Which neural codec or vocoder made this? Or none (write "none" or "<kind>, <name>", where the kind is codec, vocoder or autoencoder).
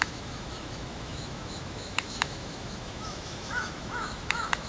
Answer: autoencoder, DAC-VAE